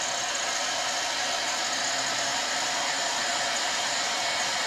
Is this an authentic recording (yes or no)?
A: yes